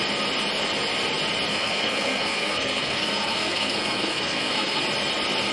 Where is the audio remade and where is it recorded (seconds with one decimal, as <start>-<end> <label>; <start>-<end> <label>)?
0.0-1.5 recorded; 1.5-4.8 remade; 4.8-5.5 recorded